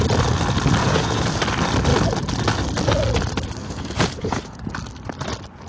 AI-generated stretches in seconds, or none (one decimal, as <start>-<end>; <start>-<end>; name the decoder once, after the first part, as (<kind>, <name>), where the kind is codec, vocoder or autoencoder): 0.8-1.4 (vocoder, Vocos); 3.6-4.7